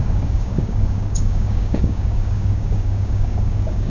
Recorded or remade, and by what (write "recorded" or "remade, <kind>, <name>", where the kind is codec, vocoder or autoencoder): remade, codec, DAC